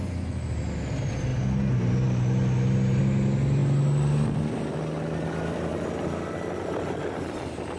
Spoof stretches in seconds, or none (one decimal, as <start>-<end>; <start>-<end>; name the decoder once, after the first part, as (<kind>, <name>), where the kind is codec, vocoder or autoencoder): none